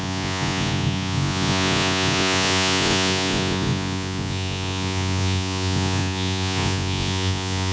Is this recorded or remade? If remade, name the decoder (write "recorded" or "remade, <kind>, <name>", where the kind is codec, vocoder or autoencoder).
remade, vocoder, Vocos